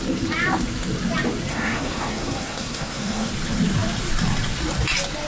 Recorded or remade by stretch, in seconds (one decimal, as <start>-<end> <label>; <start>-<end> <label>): 0.0-1.5 recorded; 1.5-3.3 remade; 3.3-5.3 recorded